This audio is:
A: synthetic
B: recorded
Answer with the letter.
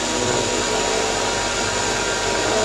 B